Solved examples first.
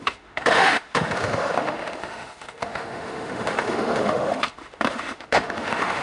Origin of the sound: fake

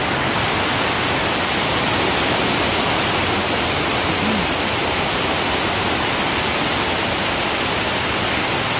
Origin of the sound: real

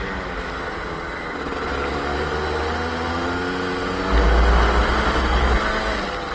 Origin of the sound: real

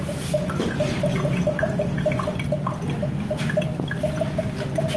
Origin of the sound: real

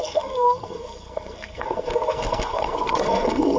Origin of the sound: fake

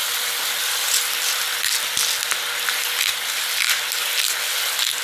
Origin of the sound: real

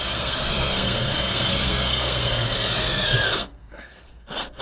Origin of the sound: fake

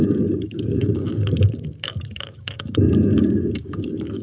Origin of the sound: fake